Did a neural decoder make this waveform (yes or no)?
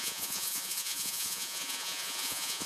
yes